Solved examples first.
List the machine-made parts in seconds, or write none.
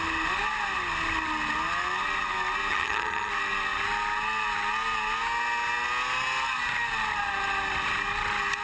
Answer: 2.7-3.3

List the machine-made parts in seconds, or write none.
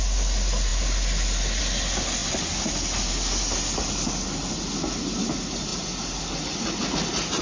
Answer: none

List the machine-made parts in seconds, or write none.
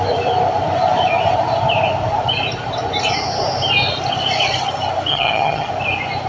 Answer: 5.1-5.7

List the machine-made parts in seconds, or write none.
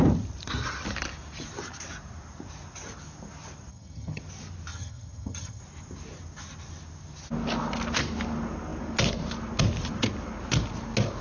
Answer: 3.7-4.2; 4.7-5.6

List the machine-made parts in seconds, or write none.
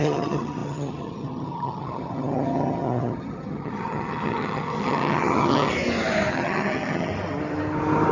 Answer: 0.0-5.7; 6.3-7.1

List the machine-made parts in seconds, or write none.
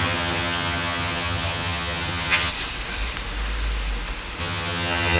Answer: 0.0-2.5; 4.4-5.2